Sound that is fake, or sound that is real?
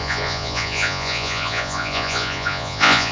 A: fake